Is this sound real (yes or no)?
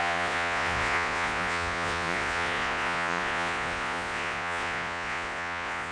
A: no